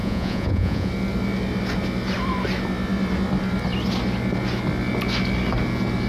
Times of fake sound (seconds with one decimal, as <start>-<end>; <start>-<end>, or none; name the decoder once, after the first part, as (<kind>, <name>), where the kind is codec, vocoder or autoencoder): 0.0-0.9 (vocoder, Vocos)

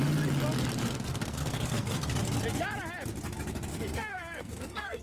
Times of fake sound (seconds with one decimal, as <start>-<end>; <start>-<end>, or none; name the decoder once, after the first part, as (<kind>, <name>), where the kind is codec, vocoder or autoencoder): 0.8-2.2 (codec, SNAC); 3.7-5.0

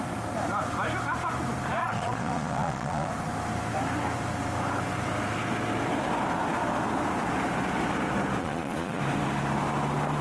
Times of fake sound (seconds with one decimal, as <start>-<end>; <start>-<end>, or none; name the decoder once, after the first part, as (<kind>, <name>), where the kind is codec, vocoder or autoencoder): 1.8-3.1 (vocoder, Vocos); 8.4-9.0

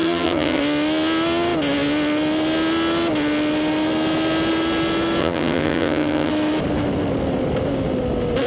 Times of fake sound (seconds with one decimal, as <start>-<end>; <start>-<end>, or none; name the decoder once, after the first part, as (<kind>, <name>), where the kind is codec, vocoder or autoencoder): 0.0-0.6 (vocoder, HiFi-GAN); 5.2-6.3

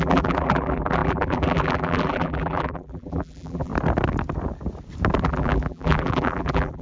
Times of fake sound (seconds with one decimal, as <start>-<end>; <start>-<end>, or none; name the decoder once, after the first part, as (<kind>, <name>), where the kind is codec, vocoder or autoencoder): 0.0-3.7 (vocoder, BigVGAN v2); 5.2-6.8

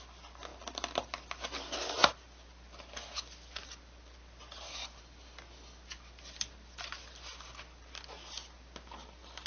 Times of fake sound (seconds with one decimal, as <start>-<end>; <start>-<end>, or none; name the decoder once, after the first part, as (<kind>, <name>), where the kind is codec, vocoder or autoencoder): none

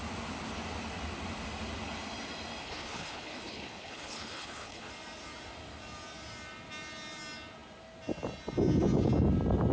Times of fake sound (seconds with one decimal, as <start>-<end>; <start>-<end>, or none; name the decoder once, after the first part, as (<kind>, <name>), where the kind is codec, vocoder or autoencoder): 2.6-4.9 (codec, HILCodec)

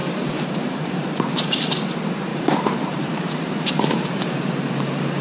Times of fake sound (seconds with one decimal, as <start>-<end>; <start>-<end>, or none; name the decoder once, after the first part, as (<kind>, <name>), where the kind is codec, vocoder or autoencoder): 0.0-1.7 (vocoder, BigVGAN v2); 2.3-4.7